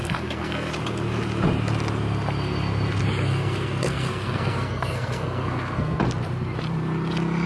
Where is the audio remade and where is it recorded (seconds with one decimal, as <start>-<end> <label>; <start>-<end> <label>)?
0.0-0.7 remade; 0.7-3.2 recorded; 3.2-6.0 remade; 6.0-7.5 recorded